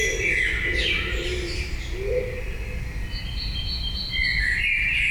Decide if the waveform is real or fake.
real